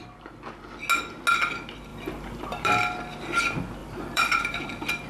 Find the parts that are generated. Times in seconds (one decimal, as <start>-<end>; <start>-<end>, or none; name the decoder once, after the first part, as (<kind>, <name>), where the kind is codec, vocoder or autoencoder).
1.9-2.7 (vocoder, BigVGAN v2); 3.8-4.6